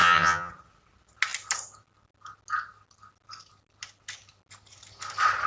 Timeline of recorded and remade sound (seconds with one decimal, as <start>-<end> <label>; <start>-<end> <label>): 0.0-0.5 remade; 0.5-5.5 recorded